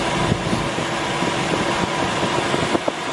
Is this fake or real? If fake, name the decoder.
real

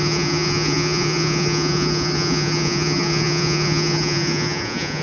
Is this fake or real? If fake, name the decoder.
fake, vocoder, Vocos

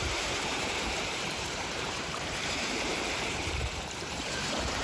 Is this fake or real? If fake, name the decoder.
fake, vocoder, BigVGAN v2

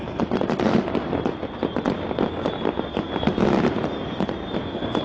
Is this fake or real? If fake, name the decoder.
real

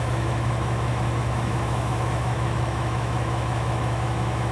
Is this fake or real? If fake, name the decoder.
fake, autoencoder, DAC-VAE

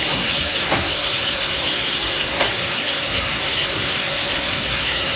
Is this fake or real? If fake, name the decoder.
fake, codec, SNAC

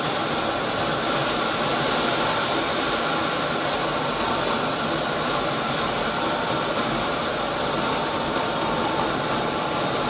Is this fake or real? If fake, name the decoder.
real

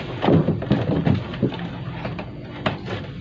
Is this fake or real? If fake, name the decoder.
real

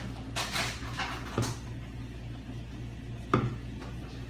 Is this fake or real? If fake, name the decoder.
real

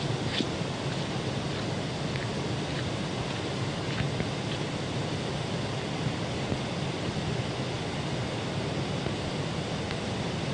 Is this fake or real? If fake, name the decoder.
real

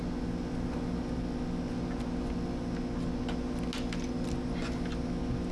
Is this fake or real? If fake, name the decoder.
real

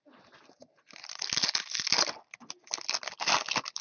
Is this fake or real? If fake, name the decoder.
real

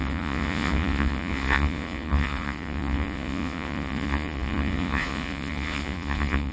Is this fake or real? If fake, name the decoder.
fake, vocoder, Vocos